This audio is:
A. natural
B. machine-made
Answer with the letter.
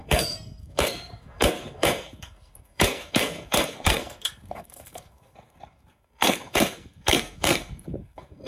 B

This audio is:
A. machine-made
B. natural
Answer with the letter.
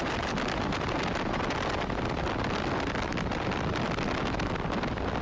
B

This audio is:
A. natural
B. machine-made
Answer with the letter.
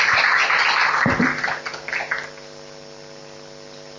A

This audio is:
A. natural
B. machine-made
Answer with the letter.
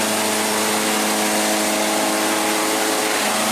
A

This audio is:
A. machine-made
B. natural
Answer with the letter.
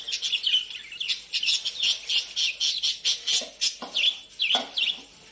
B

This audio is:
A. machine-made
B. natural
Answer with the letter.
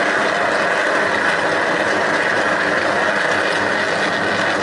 B